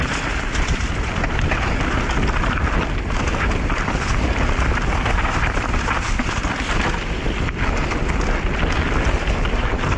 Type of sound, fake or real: real